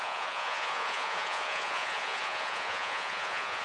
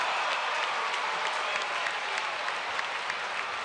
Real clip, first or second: second